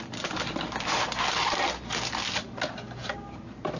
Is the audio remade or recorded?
recorded